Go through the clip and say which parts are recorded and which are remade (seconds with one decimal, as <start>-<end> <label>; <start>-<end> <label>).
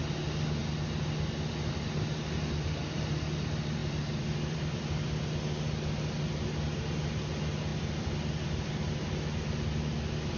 0.0-3.8 recorded; 3.8-5.2 remade; 5.2-7.7 recorded; 7.7-8.7 remade; 8.7-10.4 recorded